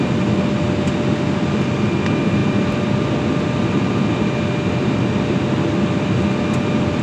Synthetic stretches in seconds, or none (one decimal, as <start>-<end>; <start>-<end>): none